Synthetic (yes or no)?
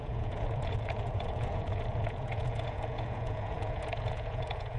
yes